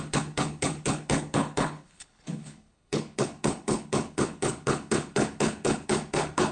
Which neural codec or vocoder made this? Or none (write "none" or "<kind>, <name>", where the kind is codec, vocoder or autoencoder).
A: codec, HILCodec